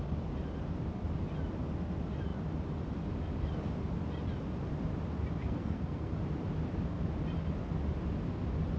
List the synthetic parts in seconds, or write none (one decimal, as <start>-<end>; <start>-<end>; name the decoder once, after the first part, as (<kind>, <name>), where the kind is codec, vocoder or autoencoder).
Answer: 5.4-6.1 (codec, SNAC)